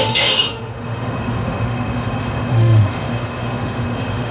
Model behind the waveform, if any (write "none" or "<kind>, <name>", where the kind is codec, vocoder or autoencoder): autoencoder, DAC-VAE